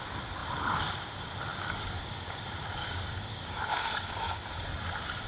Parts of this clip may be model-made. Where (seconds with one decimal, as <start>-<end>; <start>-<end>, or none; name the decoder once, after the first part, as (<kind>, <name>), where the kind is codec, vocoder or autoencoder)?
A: 1.5-2.4 (codec, DAC); 2.8-4.5